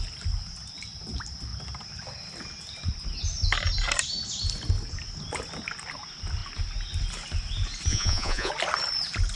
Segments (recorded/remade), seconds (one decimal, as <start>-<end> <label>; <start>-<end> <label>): 0.0-7.9 recorded; 7.9-8.5 remade; 8.5-9.4 recorded

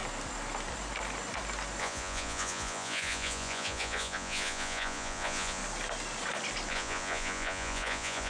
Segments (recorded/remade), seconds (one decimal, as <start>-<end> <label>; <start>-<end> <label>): 0.0-1.8 recorded; 1.8-5.6 remade; 5.6-6.7 recorded; 6.7-8.3 remade

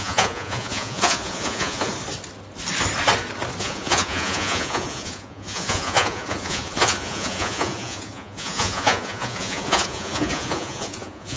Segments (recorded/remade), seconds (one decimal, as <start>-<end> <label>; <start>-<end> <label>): 0.0-1.9 remade; 1.9-3.6 recorded; 3.6-11.4 remade

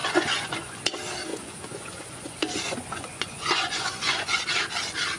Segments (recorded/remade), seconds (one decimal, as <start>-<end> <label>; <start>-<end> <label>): 0.0-0.8 remade; 0.8-1.3 recorded; 1.3-4.4 remade; 4.4-5.2 recorded